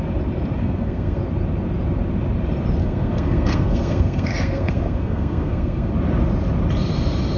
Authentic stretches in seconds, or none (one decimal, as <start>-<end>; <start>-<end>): 0.0-0.6; 1.2-2.8; 5.9-7.4